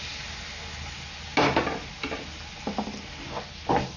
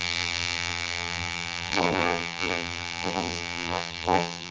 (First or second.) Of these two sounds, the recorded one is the first